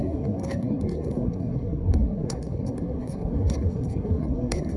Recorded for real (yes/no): no